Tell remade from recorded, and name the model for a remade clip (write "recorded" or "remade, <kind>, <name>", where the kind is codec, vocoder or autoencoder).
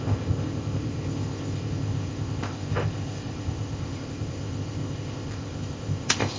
remade, codec, ZipCodec